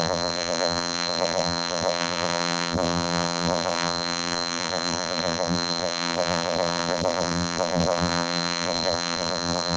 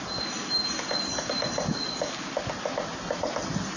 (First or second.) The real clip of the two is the second